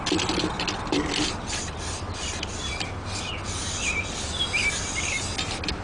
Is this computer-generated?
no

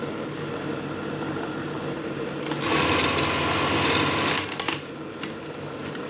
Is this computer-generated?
no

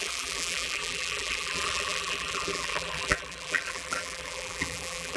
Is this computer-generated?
yes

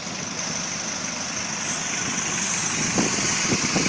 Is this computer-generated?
no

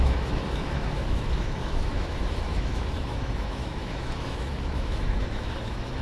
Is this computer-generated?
yes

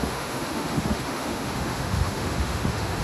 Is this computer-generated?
yes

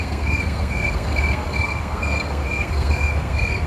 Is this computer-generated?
yes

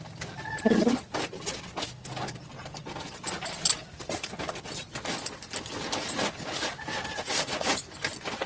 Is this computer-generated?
no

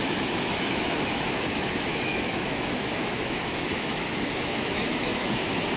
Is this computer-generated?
yes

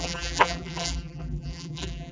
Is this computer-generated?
yes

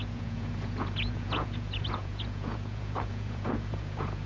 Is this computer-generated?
yes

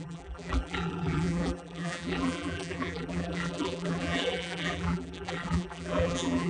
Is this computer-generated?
yes